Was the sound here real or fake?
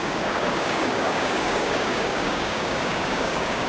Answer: fake